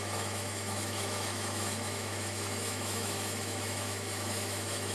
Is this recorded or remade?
remade